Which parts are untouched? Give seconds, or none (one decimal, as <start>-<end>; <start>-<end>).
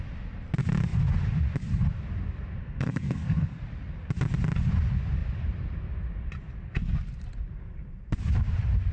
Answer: 0.0-2.6; 3.6-8.9